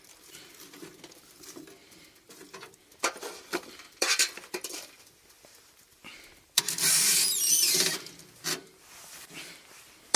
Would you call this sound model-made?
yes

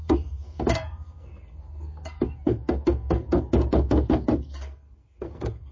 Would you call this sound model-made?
yes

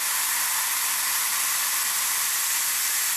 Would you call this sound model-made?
no